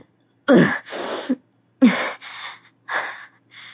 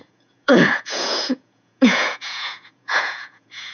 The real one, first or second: first